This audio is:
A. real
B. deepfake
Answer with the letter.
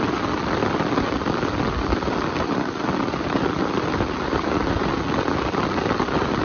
A